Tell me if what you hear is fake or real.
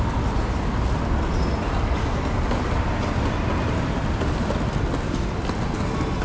real